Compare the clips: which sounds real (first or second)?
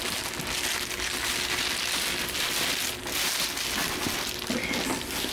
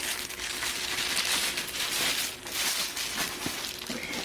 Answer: first